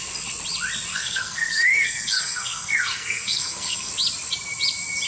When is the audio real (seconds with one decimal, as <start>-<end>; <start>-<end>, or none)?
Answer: 0.0-0.9; 3.9-5.1